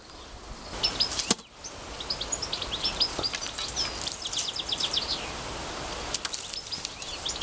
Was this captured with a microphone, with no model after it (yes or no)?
yes